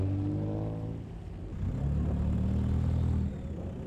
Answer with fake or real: real